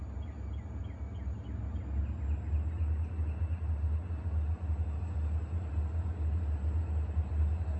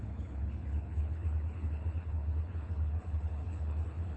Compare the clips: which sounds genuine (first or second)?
first